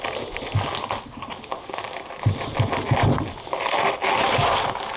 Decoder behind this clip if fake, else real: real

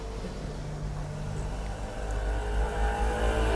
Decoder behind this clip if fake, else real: real